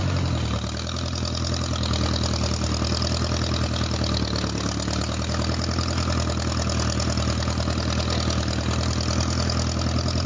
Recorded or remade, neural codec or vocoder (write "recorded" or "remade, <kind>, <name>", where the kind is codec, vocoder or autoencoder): recorded